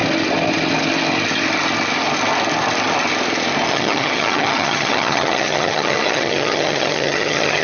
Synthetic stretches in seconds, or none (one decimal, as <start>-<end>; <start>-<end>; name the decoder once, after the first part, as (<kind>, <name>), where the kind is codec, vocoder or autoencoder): 3.7-7.6 (vocoder, HiFi-GAN)